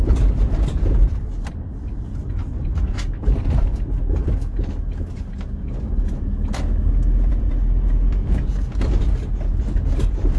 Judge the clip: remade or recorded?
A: remade